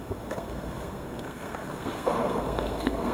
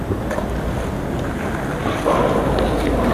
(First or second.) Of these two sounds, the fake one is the first